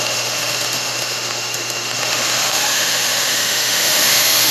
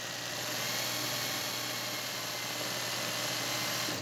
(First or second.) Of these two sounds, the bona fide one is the second